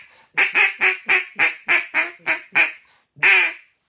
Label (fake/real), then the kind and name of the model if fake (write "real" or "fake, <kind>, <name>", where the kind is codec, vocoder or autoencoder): real